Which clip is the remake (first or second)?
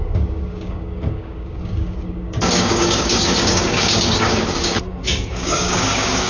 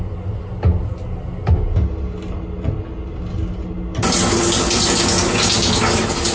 first